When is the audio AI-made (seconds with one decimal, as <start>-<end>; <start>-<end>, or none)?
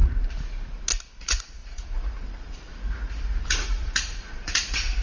1.2-5.0